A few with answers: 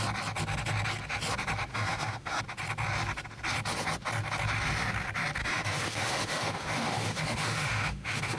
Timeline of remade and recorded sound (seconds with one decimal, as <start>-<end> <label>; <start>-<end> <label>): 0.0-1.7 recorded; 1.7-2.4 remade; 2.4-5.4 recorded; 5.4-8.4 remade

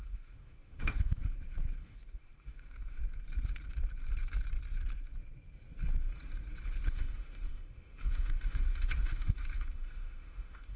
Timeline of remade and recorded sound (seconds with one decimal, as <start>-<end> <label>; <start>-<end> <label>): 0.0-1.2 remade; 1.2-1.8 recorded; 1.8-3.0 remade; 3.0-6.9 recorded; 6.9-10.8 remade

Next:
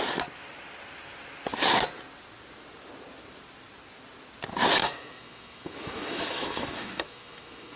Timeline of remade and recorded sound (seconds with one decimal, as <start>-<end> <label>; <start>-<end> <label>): 0.0-4.8 recorded; 4.8-7.8 remade

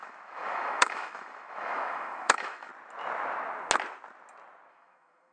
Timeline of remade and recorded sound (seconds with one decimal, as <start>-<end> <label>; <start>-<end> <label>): 0.0-2.7 remade; 2.7-4.7 recorded; 4.7-5.3 remade

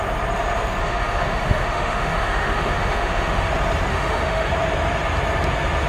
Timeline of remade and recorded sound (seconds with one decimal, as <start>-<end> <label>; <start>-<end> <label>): 0.0-0.8 recorded; 0.8-3.5 remade; 3.5-3.9 recorded; 3.9-4.5 remade; 4.5-5.9 recorded

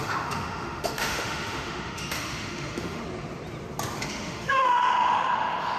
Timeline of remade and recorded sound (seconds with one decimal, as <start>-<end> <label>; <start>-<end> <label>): 0.0-3.0 remade; 3.0-4.0 recorded; 4.0-5.8 remade

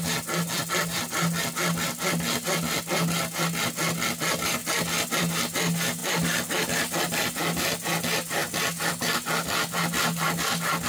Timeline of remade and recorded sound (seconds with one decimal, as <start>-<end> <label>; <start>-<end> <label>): 0.0-10.9 recorded